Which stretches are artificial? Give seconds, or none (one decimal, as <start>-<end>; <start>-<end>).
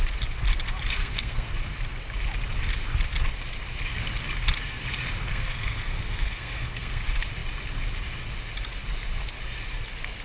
1.0-1.5; 5.3-7.0